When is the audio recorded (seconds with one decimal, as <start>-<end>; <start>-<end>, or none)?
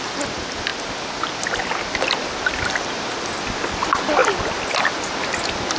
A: 0.0-5.8